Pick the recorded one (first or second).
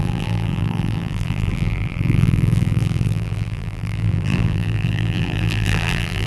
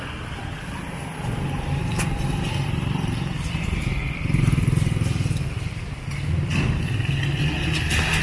second